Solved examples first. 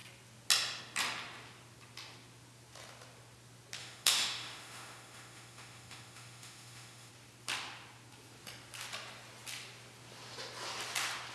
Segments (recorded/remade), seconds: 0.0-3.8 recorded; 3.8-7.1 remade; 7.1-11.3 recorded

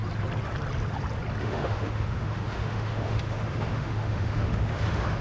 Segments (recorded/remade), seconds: 0.0-1.4 recorded; 1.4-5.2 remade

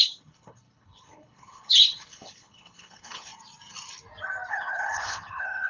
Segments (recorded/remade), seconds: 0.0-3.3 remade; 3.3-4.5 recorded; 4.5-5.7 remade

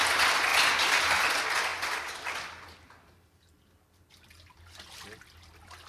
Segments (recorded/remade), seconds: 0.0-5.9 recorded

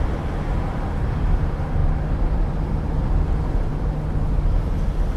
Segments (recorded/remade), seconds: 0.0-1.8 recorded; 1.8-3.8 remade; 3.8-5.2 recorded

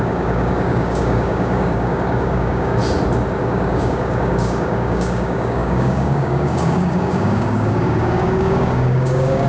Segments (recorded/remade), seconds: 0.0-2.8 remade; 2.8-3.4 recorded; 3.4-9.5 remade